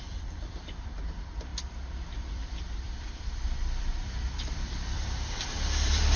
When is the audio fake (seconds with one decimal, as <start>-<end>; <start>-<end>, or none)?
0.0-1.5; 2.3-6.2